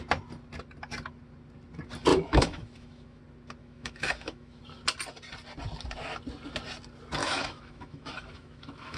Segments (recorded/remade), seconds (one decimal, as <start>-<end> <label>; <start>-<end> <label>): 0.0-2.1 recorded; 2.1-3.2 remade; 3.2-3.6 recorded; 3.6-4.6 remade; 4.6-7.2 recorded; 7.2-9.0 remade